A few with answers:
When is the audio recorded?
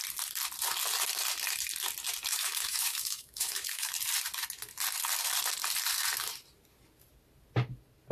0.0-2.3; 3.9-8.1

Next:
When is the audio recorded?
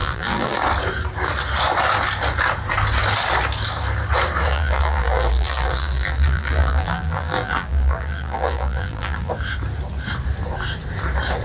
0.6-4.5; 9.3-11.4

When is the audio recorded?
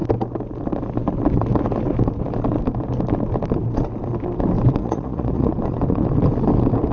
0.0-4.8; 5.5-6.9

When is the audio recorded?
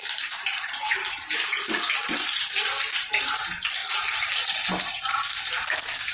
3.8-4.9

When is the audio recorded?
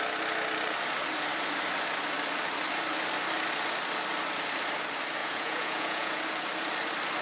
0.0-5.2; 6.2-7.2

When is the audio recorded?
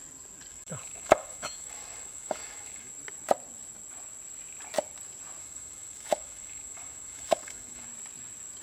0.0-0.5; 2.9-5.4; 7.9-8.6